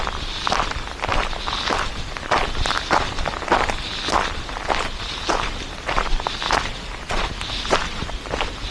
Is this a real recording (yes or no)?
yes